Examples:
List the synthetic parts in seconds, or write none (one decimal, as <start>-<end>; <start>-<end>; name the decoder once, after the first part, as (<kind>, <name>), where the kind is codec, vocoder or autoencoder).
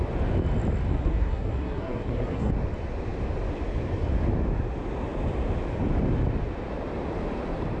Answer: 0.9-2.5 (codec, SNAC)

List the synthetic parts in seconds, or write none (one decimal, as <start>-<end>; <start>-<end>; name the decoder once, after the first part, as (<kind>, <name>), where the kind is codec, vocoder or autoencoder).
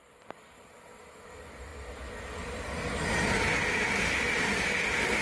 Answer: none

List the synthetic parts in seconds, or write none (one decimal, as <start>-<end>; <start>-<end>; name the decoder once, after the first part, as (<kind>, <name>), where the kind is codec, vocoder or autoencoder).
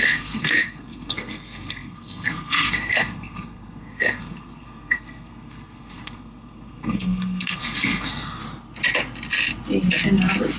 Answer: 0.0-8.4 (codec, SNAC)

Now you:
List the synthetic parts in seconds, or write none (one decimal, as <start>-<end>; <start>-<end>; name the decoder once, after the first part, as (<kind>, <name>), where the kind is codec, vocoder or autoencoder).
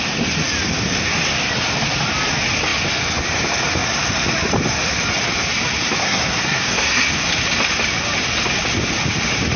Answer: 6.0-7.1 (codec, SNAC)